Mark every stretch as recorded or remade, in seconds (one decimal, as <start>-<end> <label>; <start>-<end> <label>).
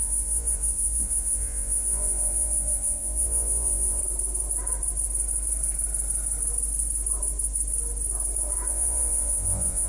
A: 0.0-4.0 remade; 4.0-8.7 recorded; 8.7-9.9 remade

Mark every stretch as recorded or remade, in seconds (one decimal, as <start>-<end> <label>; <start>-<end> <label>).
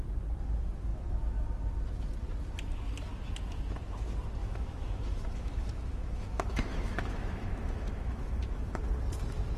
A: 0.0-4.4 recorded; 4.4-8.8 remade; 8.8-9.6 recorded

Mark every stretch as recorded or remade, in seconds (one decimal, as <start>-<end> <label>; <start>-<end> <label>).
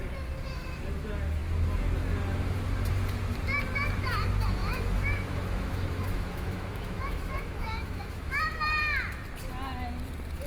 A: 0.0-4.6 recorded; 4.6-8.4 remade; 8.4-10.5 recorded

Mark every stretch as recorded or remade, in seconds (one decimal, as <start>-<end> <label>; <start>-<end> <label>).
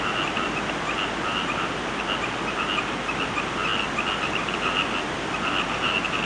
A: 0.0-6.3 recorded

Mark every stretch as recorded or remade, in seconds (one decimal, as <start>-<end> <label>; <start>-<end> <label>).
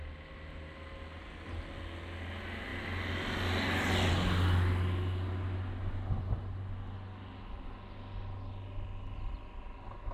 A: 0.0-10.1 recorded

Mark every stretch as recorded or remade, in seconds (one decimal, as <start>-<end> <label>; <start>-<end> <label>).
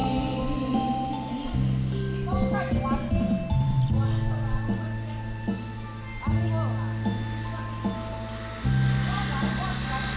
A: 0.0-10.2 recorded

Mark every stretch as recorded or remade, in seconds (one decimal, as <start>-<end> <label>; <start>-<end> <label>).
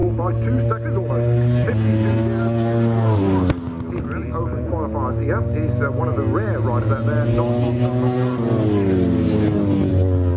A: 0.0-10.4 recorded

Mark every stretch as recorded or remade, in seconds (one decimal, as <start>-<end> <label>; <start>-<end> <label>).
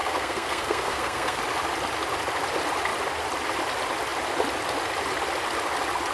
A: 0.0-1.4 remade; 1.4-6.1 recorded